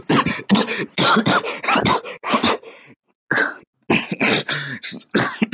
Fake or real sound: real